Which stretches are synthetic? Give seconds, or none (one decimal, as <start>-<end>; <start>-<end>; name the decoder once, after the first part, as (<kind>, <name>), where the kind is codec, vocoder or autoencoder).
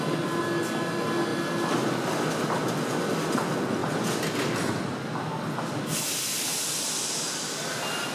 none